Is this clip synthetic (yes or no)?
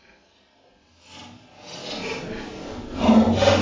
no